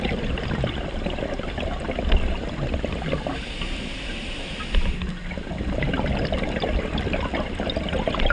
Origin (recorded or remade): recorded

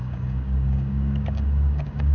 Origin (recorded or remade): remade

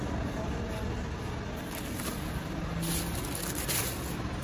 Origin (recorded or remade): recorded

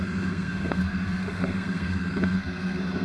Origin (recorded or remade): remade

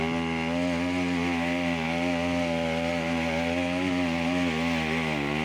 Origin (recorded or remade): recorded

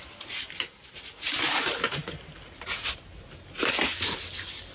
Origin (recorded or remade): recorded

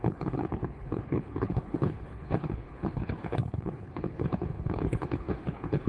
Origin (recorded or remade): remade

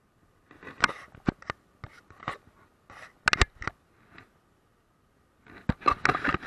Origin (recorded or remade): recorded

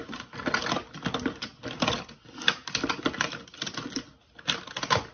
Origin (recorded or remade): recorded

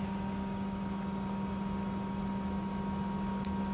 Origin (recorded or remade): recorded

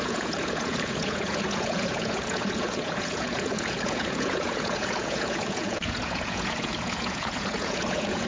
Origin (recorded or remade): remade